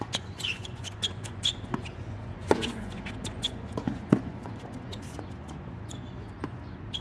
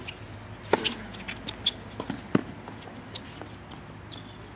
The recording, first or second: second